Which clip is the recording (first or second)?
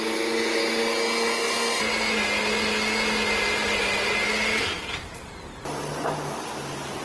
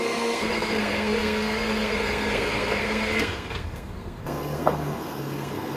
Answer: first